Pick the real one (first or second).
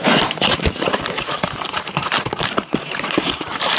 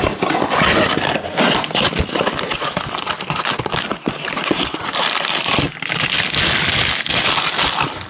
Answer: second